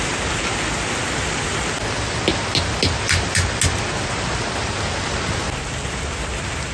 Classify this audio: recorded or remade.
recorded